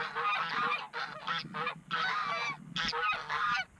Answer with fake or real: real